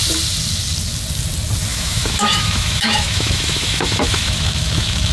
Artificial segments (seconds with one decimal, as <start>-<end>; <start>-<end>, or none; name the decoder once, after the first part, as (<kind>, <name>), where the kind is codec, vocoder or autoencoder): 1.7-5.1 (autoencoder, DAC-VAE)